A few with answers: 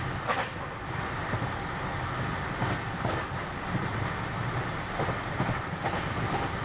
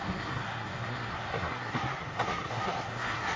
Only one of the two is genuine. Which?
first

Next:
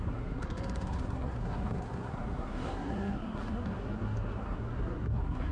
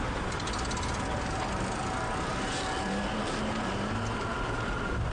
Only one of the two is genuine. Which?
second